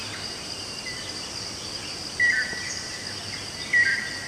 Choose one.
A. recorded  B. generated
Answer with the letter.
A